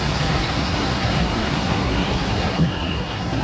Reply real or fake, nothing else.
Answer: fake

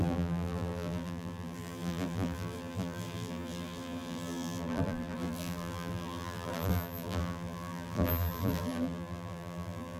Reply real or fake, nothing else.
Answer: fake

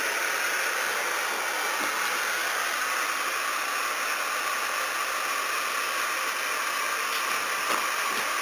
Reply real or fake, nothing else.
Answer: real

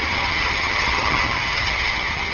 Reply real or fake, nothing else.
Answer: fake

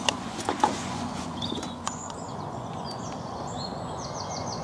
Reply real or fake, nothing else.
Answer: fake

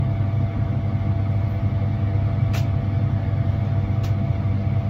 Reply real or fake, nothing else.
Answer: real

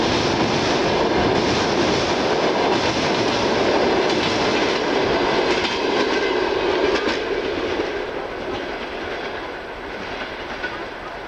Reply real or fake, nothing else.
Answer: real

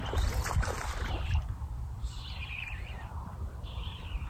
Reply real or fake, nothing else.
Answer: fake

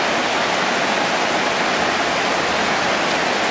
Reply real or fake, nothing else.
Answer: real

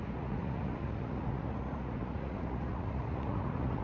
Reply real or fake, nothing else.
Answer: fake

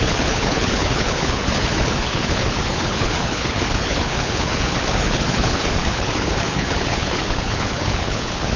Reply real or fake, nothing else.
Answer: fake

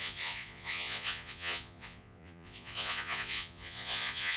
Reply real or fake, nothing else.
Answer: fake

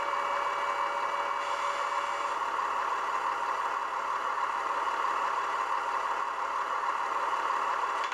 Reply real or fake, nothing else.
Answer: real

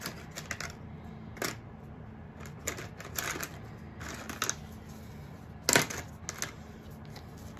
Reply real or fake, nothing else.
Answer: real